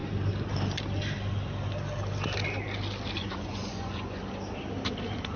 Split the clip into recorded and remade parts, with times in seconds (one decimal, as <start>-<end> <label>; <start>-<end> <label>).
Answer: 0.0-3.2 recorded; 3.2-4.2 remade; 4.2-5.4 recorded